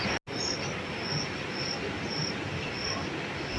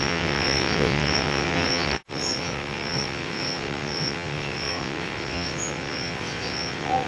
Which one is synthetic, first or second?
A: second